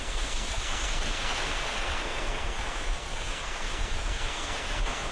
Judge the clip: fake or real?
fake